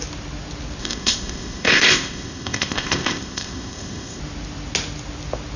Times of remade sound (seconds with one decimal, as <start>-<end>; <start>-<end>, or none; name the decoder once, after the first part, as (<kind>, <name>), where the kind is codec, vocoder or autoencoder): 0.8-4.2 (codec, ZipCodec)